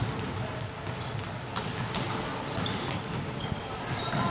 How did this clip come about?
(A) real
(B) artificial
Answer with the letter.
A